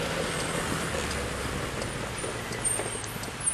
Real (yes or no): yes